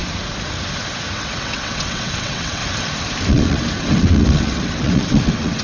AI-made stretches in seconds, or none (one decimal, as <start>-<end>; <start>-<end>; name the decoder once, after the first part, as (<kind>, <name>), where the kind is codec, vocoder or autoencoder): 1.1-2.6 (vocoder, WaveNeXt); 3.3-5.6